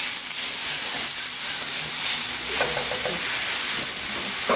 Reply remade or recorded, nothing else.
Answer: recorded